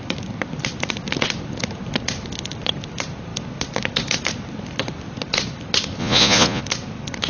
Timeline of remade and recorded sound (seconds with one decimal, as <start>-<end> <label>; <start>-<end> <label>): 0.0-6.0 recorded; 6.0-6.6 remade; 6.6-7.3 recorded